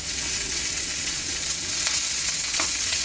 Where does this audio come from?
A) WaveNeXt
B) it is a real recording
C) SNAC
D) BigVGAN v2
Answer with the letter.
A